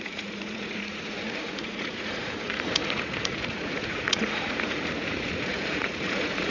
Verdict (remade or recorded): remade